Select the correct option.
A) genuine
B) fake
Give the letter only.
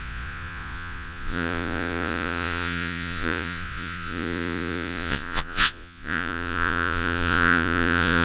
B